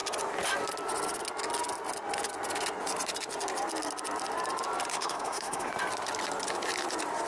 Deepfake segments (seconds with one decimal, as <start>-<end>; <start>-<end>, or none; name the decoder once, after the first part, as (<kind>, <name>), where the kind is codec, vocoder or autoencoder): 4.9-5.7 (codec, SNAC)